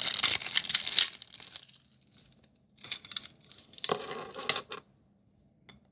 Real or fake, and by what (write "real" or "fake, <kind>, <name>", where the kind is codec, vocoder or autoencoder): real